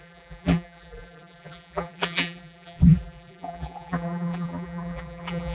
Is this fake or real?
fake